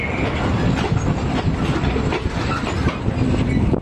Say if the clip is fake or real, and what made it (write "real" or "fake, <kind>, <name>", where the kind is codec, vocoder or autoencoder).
real